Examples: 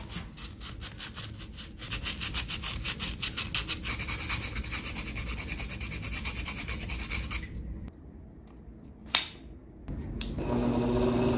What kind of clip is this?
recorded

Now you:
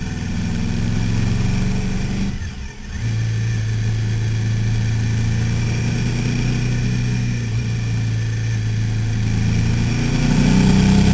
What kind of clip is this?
recorded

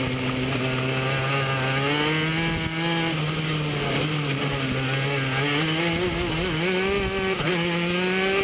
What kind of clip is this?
recorded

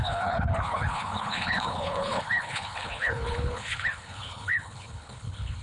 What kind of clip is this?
remade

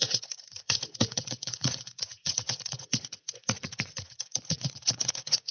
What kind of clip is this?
remade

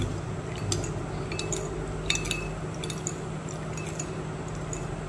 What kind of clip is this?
recorded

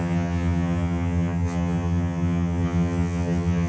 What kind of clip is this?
remade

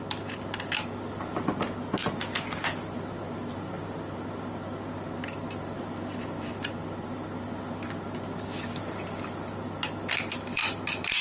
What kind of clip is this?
recorded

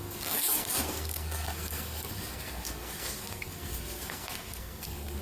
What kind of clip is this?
remade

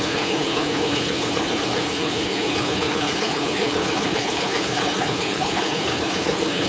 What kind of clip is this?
remade